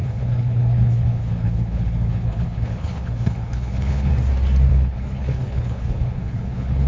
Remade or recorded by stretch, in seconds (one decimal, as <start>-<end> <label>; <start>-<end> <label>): 0.0-4.1 remade; 4.1-4.7 recorded; 4.7-6.9 remade